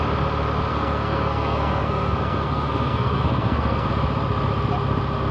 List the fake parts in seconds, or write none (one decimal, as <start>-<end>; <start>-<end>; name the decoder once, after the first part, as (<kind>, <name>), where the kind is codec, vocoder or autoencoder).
0.7-3.9 (codec, SNAC)